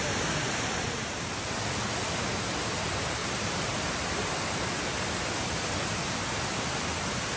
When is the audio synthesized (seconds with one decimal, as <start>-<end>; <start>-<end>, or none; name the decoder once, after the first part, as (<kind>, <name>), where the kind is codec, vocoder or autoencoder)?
3.2-4.6 (vocoder, BigVGAN v2)